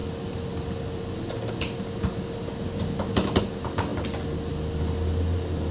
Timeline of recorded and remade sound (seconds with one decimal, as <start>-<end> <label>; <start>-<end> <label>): 0.0-5.7 recorded